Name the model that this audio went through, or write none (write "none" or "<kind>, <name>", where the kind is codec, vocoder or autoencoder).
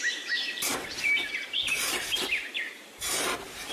vocoder, BigVGAN v2